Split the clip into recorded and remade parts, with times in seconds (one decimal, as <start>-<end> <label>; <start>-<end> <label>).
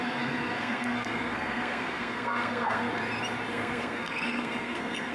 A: 0.0-2.9 remade; 2.9-3.5 recorded; 3.5-5.1 remade